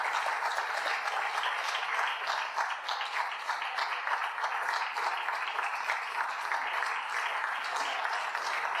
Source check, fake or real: real